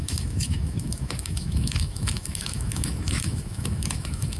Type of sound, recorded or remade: remade